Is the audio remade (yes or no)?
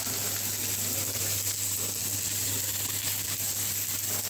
no